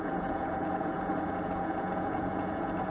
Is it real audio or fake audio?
fake